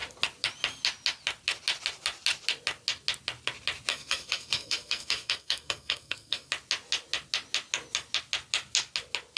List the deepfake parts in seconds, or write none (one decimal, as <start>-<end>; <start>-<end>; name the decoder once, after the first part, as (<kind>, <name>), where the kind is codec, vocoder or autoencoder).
3.9-6.5 (codec, SNAC)